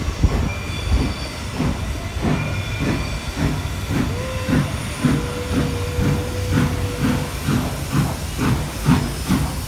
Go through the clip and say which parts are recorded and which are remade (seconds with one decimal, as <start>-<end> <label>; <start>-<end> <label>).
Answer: 0.0-9.7 recorded